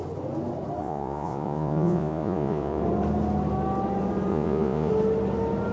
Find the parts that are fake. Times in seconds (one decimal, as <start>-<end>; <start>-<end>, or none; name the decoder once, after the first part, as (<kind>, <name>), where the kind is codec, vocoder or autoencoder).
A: 0.8-2.8 (vocoder, Vocos); 4.3-4.9